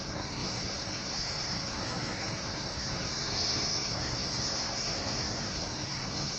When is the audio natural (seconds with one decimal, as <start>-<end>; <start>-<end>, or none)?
none